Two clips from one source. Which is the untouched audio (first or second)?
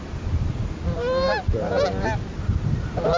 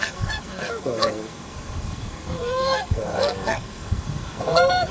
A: first